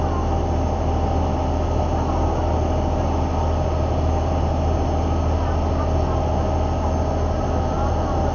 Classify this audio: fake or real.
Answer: real